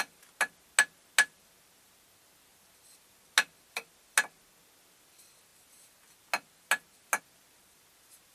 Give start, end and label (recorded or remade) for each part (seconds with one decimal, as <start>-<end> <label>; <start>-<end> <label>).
0.0-8.3 recorded